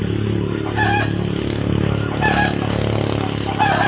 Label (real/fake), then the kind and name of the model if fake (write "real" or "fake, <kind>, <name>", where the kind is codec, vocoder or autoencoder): real